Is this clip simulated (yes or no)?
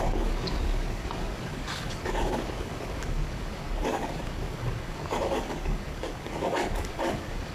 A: yes